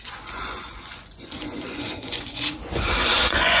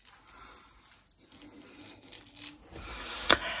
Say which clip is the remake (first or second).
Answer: first